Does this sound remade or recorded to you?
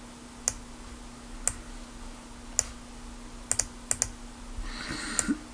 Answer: recorded